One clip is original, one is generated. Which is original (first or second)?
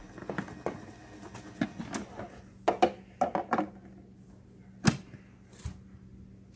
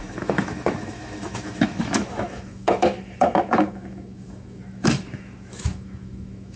first